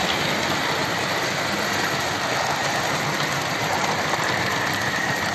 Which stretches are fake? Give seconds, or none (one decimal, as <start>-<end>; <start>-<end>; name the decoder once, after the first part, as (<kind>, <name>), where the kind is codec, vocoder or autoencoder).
0.8-2.0 (vocoder, BigVGAN v2); 2.6-5.3